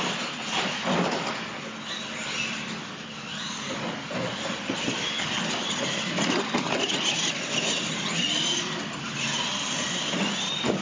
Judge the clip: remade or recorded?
recorded